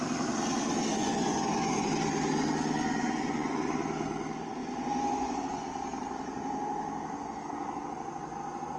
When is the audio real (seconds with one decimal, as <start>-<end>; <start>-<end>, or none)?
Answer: 0.0-0.9; 1.9-3.0; 3.5-4.6; 5.4-8.8